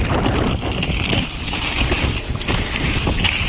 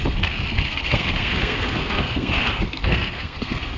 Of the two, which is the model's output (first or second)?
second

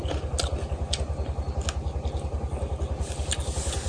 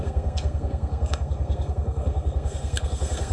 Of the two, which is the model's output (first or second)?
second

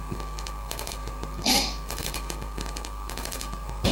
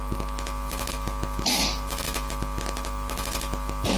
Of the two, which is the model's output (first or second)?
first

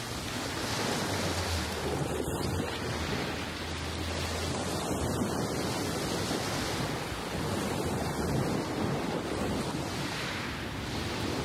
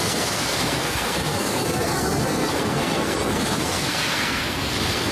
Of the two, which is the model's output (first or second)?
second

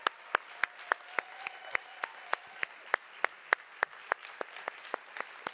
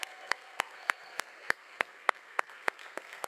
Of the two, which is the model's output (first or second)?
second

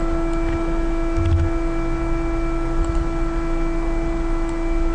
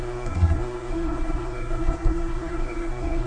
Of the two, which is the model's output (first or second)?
second